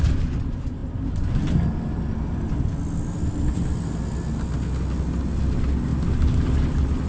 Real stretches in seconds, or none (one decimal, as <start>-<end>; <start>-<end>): 0.0-7.1